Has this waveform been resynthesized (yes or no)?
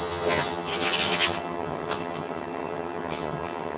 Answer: yes